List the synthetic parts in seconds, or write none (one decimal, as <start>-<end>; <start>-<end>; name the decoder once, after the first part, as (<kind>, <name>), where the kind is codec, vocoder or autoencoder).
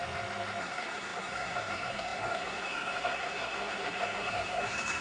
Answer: 0.6-5.0 (codec, SNAC)